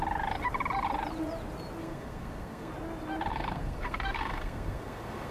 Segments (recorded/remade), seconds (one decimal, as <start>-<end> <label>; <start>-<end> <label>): 0.0-1.8 recorded; 1.8-2.7 remade; 2.7-3.3 recorded; 3.3-5.3 remade